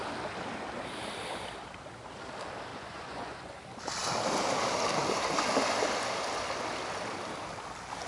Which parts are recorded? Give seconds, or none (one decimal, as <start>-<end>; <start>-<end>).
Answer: 0.0-2.7; 3.6-8.1